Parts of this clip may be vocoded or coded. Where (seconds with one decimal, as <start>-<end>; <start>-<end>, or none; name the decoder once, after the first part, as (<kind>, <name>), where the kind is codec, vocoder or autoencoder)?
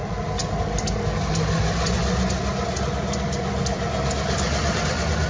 none